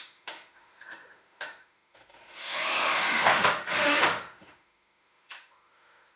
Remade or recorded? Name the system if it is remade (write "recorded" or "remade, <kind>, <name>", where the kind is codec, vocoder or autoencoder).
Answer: remade, autoencoder, DAC-VAE